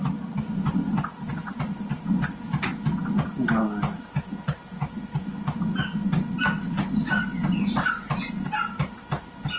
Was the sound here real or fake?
real